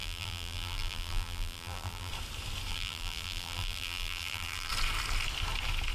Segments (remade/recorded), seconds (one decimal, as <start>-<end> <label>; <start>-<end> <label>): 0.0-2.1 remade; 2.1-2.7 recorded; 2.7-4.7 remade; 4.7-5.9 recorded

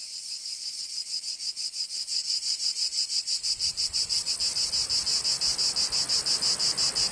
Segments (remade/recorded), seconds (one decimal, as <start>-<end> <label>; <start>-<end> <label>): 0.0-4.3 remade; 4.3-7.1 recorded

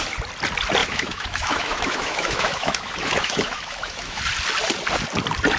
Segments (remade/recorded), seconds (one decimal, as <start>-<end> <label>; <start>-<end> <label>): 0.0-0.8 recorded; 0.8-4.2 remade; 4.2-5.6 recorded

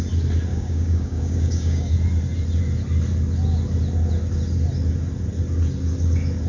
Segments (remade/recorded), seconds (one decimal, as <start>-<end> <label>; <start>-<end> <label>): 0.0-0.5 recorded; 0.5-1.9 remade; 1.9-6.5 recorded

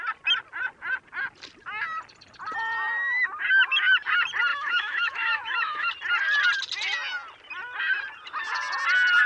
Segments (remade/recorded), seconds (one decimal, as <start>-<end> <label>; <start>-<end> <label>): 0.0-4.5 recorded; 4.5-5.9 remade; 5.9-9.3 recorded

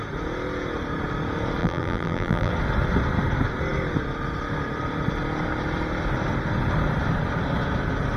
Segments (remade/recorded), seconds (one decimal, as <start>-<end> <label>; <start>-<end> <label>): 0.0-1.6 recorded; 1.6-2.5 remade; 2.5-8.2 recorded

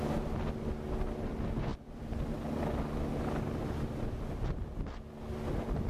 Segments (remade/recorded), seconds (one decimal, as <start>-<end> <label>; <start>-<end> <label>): 0.0-5.9 recorded

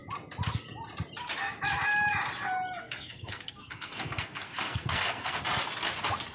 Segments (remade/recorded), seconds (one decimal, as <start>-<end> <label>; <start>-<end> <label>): 0.0-2.8 recorded; 2.8-5.4 remade; 5.4-6.3 recorded